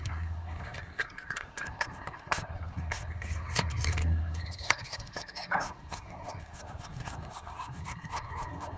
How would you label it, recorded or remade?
remade